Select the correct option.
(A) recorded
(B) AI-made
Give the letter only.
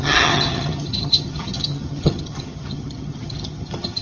B